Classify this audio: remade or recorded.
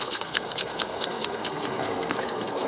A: remade